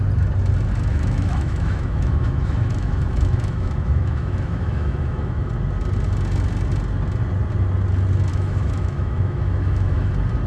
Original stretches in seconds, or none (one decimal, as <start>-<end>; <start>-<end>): 0.0-0.9; 5.5-8.3; 10.1-10.5